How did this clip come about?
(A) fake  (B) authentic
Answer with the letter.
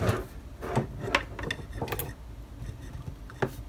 B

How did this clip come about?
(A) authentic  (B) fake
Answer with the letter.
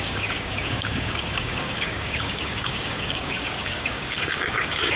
B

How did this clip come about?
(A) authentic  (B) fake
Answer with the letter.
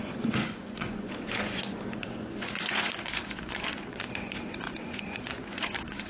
B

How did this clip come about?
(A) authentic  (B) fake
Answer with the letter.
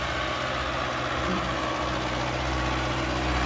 A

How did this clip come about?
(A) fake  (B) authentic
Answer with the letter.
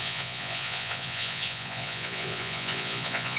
A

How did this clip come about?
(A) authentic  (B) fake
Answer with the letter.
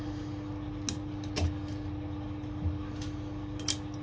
A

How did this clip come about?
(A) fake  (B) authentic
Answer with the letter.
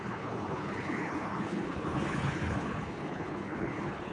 A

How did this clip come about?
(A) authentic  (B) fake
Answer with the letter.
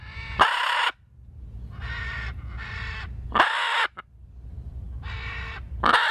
A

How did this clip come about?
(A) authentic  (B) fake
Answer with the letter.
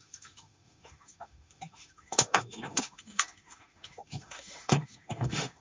B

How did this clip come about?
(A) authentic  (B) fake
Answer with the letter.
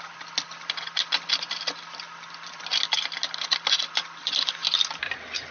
A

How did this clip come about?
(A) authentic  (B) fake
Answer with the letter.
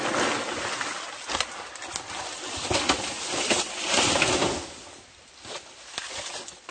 A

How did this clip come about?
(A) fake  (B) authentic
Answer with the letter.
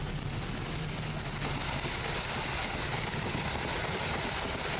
B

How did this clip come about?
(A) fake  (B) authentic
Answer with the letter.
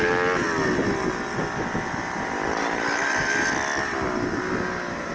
B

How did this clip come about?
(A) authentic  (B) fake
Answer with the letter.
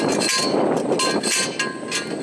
A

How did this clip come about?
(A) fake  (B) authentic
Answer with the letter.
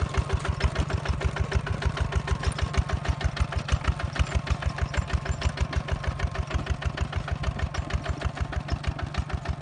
B